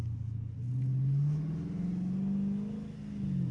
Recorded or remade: recorded